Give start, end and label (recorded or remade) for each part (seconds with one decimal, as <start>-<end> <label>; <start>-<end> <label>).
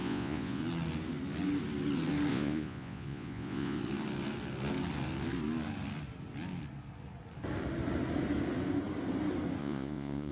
0.0-0.6 remade; 0.6-2.3 recorded; 2.3-3.8 remade; 3.8-9.6 recorded; 9.6-10.3 remade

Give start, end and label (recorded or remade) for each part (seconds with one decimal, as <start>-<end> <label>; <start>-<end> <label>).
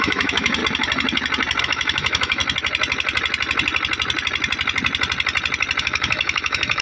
0.0-0.6 remade; 0.6-1.6 recorded; 1.6-2.4 remade; 2.4-5.8 recorded; 5.8-6.8 remade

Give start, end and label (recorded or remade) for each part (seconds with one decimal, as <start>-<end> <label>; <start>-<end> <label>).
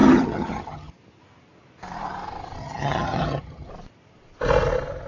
0.0-0.9 remade; 0.9-2.6 recorded; 2.6-3.7 remade; 3.7-5.1 recorded